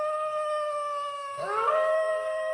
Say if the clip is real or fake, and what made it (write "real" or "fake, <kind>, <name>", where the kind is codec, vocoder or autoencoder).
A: fake, codec, DAC